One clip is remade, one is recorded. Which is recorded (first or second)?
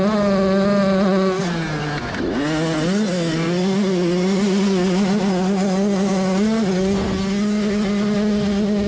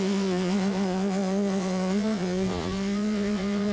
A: first